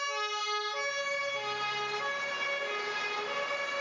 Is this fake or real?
real